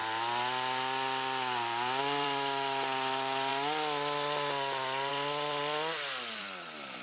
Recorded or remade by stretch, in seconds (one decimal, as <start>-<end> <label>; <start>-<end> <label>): 0.0-2.0 recorded; 2.0-3.5 remade; 3.5-5.1 recorded; 5.1-7.0 remade